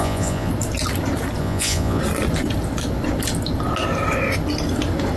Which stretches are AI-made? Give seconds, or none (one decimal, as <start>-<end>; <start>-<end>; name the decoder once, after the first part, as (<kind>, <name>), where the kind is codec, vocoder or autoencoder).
0.0-0.5 (vocoder, Vocos); 1.4-2.0